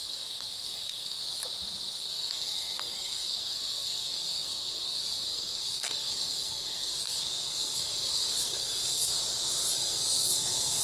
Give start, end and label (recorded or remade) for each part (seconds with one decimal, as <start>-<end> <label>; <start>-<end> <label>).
0.0-1.2 remade; 1.2-2.0 recorded; 2.0-9.1 remade; 9.1-9.7 recorded; 9.7-10.8 remade